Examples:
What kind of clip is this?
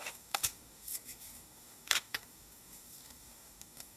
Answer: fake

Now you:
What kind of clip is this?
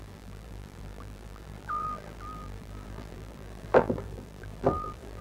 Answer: fake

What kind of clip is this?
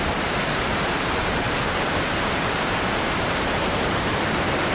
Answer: fake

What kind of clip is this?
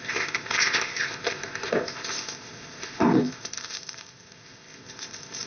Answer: fake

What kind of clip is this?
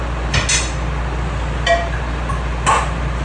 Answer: real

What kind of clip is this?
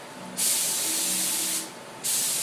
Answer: real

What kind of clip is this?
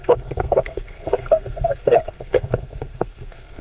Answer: fake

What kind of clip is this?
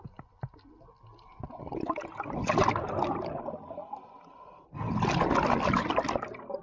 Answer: real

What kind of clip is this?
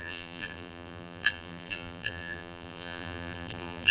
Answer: fake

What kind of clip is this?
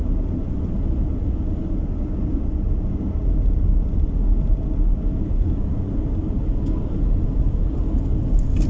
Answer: real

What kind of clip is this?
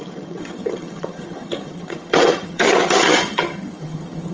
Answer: fake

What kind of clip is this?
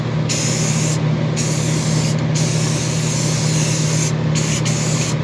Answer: real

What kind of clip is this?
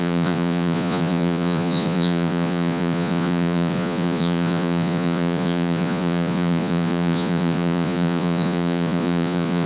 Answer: fake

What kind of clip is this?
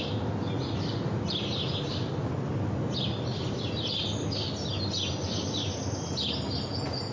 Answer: real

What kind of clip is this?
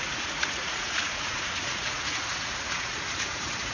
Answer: fake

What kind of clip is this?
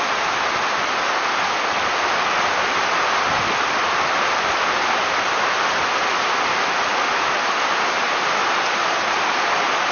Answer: real